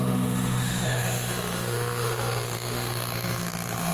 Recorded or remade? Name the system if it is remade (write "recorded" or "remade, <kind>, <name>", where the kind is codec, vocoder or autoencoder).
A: remade, autoencoder, DAC-VAE